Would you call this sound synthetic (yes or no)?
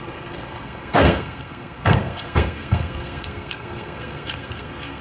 yes